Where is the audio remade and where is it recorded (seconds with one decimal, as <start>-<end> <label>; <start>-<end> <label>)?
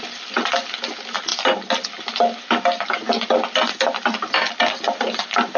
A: 0.0-5.6 recorded